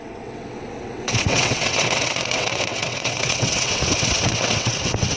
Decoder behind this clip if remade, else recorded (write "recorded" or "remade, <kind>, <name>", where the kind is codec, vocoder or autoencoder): remade, vocoder, WaveNeXt